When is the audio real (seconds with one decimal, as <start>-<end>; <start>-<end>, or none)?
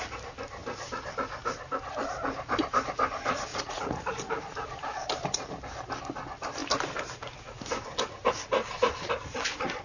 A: 0.0-3.5; 4.1-9.8